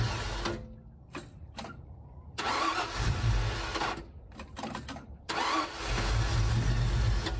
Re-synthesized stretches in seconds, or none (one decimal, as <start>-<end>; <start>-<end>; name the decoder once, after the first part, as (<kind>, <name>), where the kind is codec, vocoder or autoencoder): 1.3-3.3 (vocoder, BigVGAN v2)